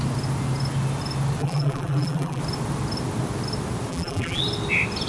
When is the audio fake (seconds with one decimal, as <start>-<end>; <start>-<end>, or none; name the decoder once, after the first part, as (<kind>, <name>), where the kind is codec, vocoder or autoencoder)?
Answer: 1.4-2.4 (vocoder, BigVGAN v2); 3.9-4.4